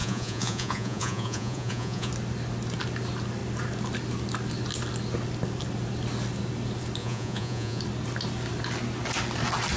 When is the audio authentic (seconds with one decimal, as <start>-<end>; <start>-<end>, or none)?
2.1-7.0; 7.8-9.8